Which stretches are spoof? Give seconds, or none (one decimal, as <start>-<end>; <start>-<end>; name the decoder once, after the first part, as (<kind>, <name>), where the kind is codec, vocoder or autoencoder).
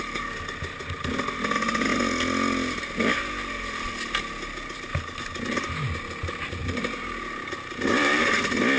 6.6-8.3 (vocoder, BigVGAN v2)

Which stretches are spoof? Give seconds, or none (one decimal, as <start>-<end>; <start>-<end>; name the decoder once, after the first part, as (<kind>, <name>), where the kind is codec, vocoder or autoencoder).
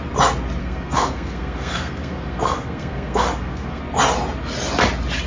0.6-3.8 (codec, SNAC)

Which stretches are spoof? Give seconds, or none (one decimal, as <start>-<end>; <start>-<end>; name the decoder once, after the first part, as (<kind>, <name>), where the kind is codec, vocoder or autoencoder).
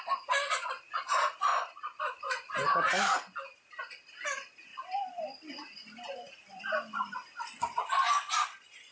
none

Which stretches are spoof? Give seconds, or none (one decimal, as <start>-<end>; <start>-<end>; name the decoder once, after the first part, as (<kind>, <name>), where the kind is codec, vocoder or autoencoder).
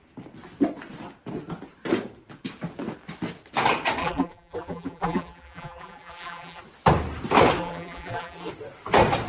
4.0-6.6 (vocoder, BigVGAN v2); 7.6-8.5